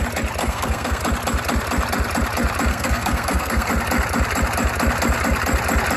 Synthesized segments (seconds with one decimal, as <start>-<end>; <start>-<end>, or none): 0.4-1.0; 2.7-3.7